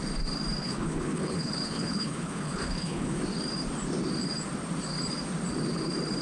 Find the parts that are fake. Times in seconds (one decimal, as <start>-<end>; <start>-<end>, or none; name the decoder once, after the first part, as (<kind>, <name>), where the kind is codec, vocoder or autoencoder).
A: 0.6-3.2 (codec, HILCodec)